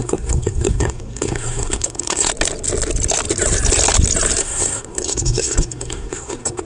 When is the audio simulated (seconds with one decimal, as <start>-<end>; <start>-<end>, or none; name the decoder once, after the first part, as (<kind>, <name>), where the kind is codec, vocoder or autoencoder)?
0.0-2.3 (codec, SNAC); 4.4-6.6